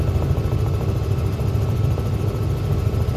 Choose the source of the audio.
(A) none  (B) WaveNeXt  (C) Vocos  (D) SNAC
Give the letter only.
A